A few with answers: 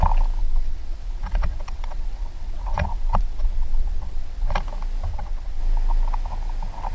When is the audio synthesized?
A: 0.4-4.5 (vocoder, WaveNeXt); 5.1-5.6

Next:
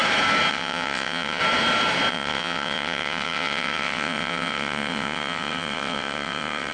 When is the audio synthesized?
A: 0.5-1.4 (vocoder, WaveNeXt); 2.1-6.7

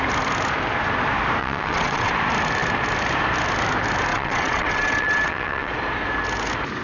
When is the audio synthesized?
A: 1.4-2.1 (vocoder, WaveNeXt); 4.1-5.7

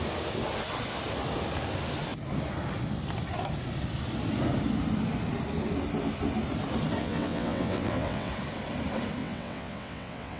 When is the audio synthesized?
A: 7.0-8.3 (vocoder, WaveNeXt); 9.2-10.4

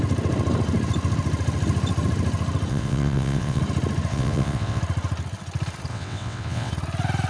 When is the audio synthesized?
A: 2.7-3.6 (vocoder, WaveNeXt); 4.1-4.8; 5.9-6.7

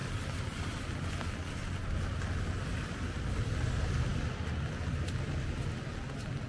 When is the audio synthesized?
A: none

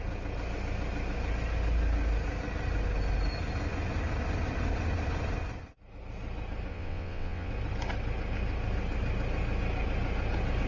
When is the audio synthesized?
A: 6.7-7.5 (vocoder, WaveNeXt)